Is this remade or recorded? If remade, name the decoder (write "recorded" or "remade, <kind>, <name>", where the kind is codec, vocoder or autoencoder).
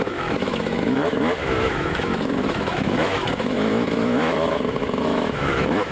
remade, autoencoder, DAC-VAE